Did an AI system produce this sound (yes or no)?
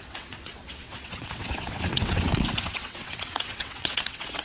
yes